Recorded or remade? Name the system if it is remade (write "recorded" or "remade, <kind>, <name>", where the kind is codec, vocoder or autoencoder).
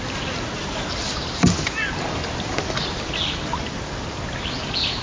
recorded